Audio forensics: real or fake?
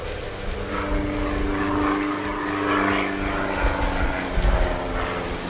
real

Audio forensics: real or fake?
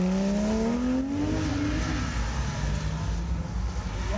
real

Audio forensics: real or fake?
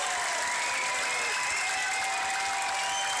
real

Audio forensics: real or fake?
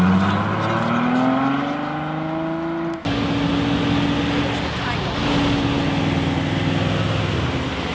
real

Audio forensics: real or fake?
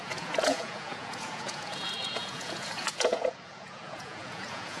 fake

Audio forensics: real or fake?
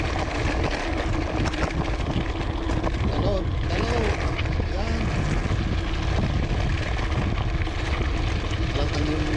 real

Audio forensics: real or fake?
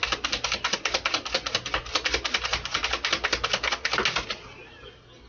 real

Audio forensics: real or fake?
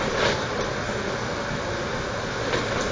real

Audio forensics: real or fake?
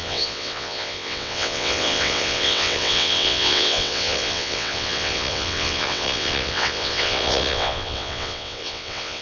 fake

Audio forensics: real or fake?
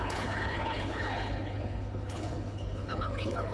fake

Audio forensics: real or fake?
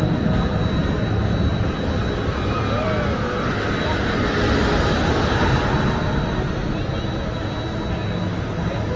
real